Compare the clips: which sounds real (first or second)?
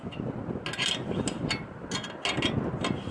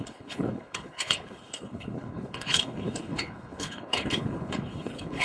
first